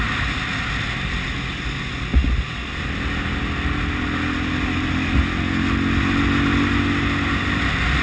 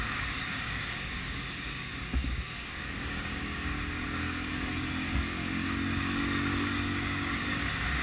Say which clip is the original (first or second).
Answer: first